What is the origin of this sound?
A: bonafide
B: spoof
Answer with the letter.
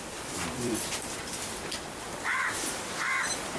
B